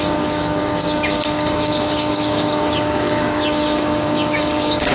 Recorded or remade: remade